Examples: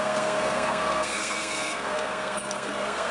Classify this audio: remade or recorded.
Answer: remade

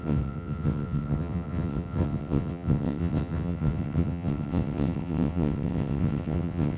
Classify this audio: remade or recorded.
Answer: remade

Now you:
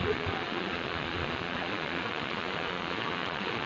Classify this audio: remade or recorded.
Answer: remade